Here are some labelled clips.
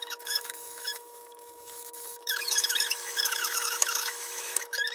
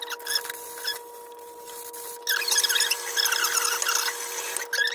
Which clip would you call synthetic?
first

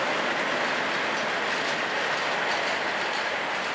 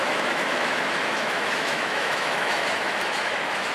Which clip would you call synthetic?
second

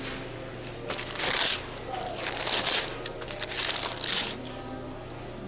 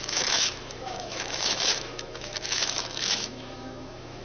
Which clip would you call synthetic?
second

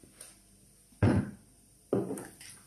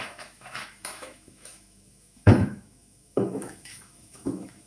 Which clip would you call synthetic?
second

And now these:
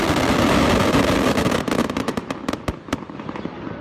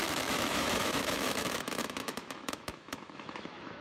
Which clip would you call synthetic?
second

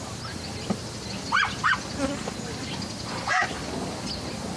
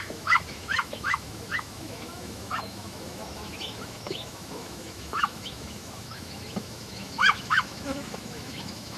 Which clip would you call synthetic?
second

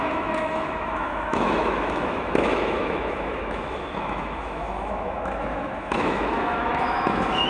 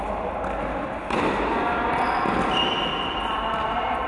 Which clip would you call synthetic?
first